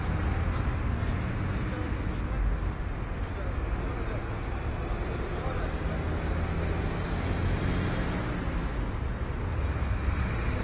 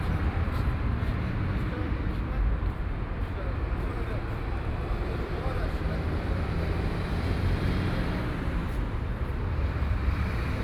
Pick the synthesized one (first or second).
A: second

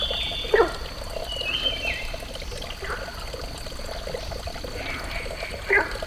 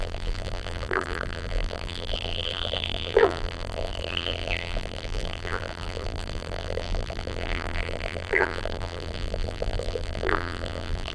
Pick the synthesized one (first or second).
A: second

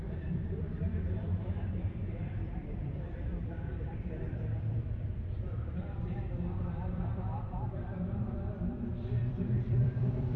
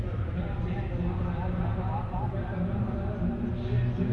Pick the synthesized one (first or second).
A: first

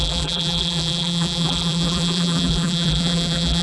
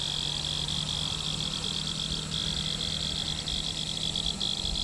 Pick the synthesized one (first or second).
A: first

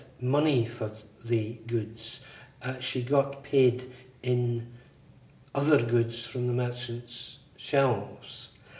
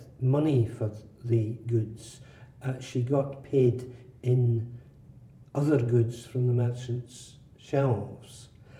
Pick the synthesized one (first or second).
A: second